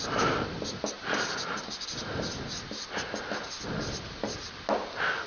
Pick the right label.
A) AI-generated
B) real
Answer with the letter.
B